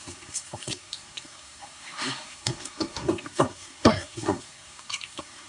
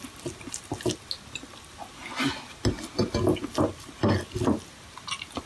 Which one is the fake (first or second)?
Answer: first